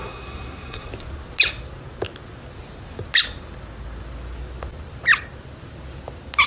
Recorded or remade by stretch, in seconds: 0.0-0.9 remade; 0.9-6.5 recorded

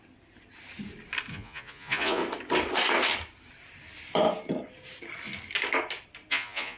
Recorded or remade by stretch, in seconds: 0.0-1.3 recorded; 1.3-2.2 remade; 2.2-6.3 recorded; 6.3-6.8 remade

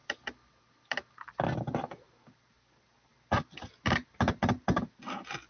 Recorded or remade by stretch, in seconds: 0.0-5.5 recorded

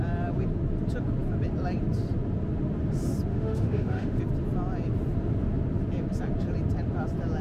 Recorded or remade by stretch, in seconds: 0.0-3.3 recorded; 3.3-4.2 remade; 4.2-7.4 recorded

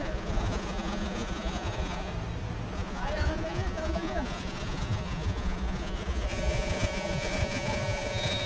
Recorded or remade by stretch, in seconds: 0.0-2.1 remade; 2.1-2.7 recorded; 2.7-8.5 remade

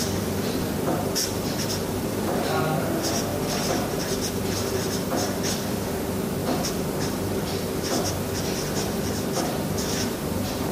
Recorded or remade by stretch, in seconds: 0.0-4.4 remade; 4.4-5.6 recorded; 5.6-10.7 remade

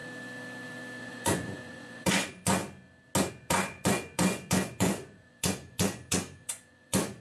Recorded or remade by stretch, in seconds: 0.0-1.0 recorded; 1.0-2.6 remade; 2.6-3.3 recorded; 3.3-7.2 remade